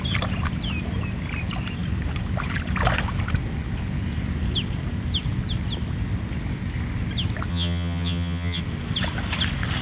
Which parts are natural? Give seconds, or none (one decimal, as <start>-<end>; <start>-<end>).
0.0-7.5; 8.6-9.8